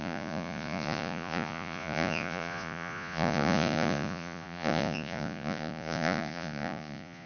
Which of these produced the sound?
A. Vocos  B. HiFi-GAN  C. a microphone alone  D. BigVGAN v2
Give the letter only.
A